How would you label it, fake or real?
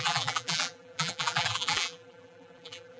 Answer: fake